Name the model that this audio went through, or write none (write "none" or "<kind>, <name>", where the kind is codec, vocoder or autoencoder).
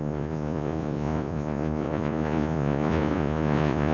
vocoder, Vocos